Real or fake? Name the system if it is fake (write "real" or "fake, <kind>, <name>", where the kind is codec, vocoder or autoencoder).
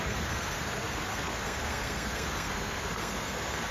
fake, codec, SNAC